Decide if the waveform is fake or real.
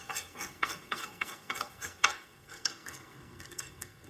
fake